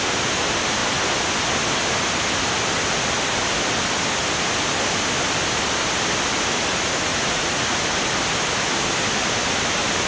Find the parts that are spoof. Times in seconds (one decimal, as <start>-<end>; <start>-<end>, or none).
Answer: 7.1-7.8